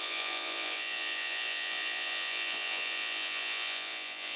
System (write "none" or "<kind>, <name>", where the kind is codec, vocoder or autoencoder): vocoder, Vocos